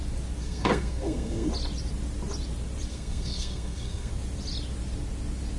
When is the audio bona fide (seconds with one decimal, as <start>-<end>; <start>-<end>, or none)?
0.0-0.4; 1.5-2.9; 4.1-5.6